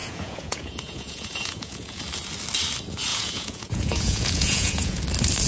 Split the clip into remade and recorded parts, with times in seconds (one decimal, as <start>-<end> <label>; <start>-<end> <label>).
0.0-2.0 remade; 2.0-3.1 recorded; 3.1-5.0 remade; 5.0-5.5 recorded